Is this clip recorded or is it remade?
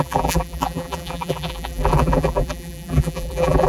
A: remade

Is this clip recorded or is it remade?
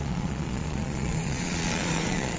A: remade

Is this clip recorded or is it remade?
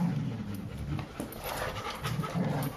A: recorded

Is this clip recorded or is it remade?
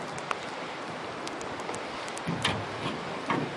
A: remade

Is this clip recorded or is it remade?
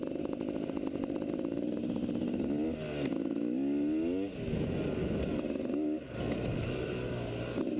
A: recorded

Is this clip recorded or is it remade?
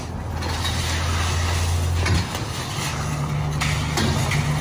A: recorded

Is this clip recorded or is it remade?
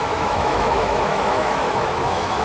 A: remade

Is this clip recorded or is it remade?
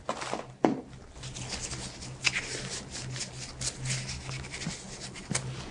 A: recorded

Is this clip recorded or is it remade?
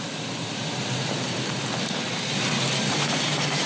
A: recorded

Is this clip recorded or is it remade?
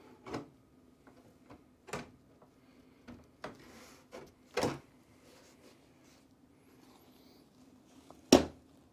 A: recorded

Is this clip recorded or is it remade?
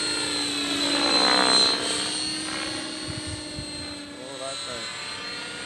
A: recorded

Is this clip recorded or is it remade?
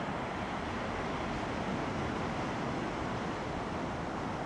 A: recorded